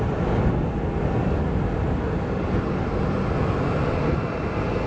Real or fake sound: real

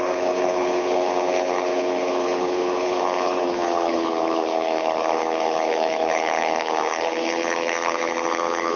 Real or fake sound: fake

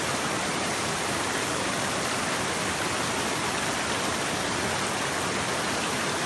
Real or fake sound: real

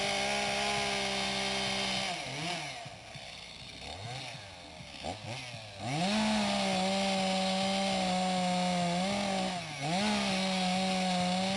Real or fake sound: real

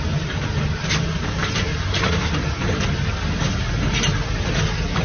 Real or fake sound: real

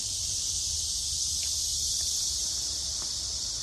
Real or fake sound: real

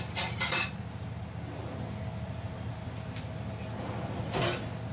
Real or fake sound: real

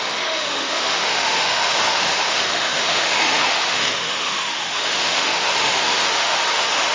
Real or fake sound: fake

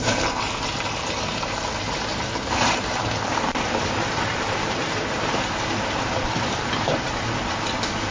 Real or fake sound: fake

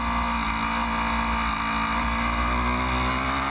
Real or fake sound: real